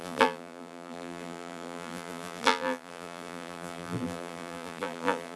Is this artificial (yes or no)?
yes